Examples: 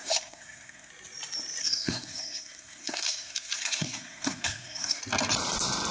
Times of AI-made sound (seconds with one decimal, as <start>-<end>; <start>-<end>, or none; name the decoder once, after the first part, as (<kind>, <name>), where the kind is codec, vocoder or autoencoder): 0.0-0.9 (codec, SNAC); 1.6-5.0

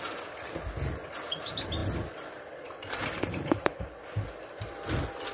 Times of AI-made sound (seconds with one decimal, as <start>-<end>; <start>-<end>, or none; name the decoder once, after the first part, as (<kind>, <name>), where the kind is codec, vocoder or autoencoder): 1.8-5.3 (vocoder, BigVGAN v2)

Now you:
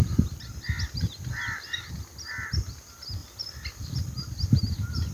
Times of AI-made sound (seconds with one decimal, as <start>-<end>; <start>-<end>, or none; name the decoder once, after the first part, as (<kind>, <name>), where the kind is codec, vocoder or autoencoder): 0.0-0.8 (vocoder, BigVGAN v2); 3.2-4.0

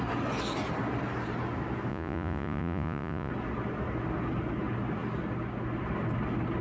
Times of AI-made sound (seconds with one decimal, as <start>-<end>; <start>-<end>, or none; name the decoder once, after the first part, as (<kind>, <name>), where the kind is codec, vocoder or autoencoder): 1.9-3.3 (vocoder, Vocos)

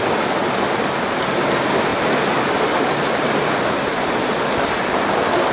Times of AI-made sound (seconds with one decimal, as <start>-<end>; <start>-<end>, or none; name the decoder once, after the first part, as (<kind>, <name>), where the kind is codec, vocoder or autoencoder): none

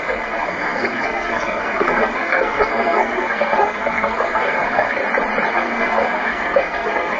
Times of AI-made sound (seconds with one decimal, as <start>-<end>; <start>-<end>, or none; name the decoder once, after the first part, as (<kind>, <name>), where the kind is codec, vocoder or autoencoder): 0.0-5.0 (codec, SNAC); 5.5-7.2